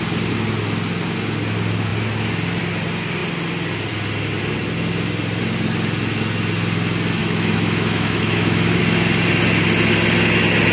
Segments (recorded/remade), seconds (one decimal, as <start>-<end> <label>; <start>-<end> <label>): 0.0-7.2 recorded; 7.2-8.8 remade; 8.8-10.7 recorded